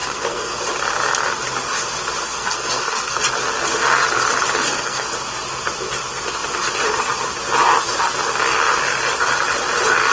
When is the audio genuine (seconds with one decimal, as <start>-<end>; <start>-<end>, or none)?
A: 0.6-2.2; 3.2-4.6; 5.1-10.1